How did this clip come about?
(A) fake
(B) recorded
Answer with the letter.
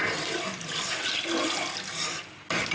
B